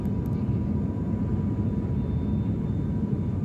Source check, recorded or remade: remade